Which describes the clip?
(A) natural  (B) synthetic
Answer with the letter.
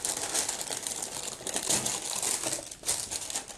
A